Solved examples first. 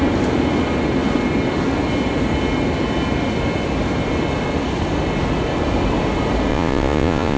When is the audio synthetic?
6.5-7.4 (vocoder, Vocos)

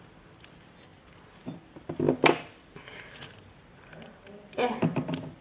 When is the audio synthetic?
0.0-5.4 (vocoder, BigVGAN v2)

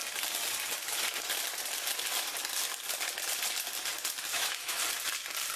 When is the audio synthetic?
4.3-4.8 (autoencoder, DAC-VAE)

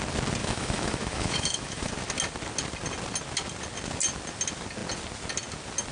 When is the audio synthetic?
0.4-1.9 (autoencoder, DAC-VAE)

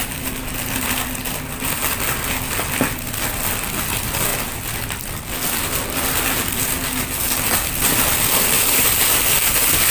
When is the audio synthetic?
none

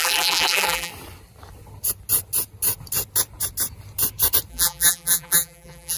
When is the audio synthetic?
0.0-0.9 (vocoder, BigVGAN v2); 4.5-6.0